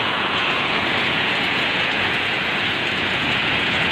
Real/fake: fake